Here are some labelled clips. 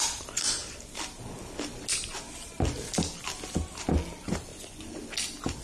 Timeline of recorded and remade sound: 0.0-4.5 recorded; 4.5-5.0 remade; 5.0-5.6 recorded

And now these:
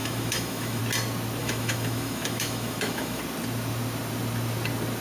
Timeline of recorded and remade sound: 0.0-0.8 remade; 0.8-1.4 recorded; 1.4-3.2 remade; 3.2-5.0 recorded